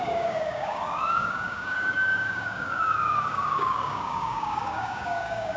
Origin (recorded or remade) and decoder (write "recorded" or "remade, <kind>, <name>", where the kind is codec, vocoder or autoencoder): remade, codec, DAC